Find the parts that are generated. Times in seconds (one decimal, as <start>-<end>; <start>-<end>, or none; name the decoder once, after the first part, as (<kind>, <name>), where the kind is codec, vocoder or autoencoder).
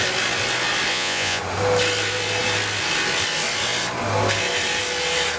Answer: 0.9-1.4 (vocoder, Vocos)